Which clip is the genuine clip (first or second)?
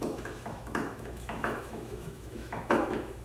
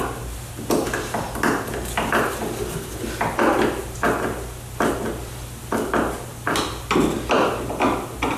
second